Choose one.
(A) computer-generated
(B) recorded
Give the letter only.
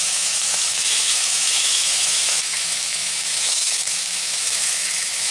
A